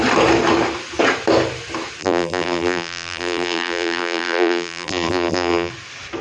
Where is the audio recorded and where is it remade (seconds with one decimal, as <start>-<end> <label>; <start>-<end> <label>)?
0.0-2.0 recorded; 2.0-5.7 remade; 5.7-6.2 recorded